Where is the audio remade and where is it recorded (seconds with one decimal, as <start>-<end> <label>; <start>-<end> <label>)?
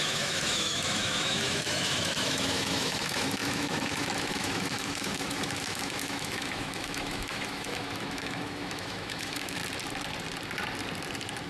0.0-9.6 remade; 9.6-11.5 recorded